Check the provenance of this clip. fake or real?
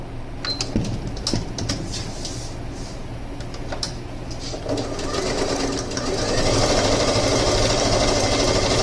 real